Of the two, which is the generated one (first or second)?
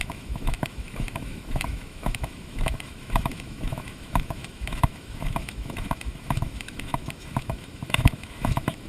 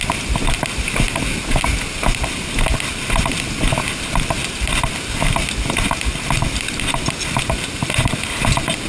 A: first